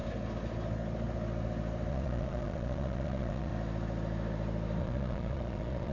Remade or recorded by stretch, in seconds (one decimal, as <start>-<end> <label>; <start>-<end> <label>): 0.0-1.9 recorded; 1.9-3.5 remade; 3.5-4.8 recorded; 4.8-5.9 remade